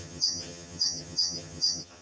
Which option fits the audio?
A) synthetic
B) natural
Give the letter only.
A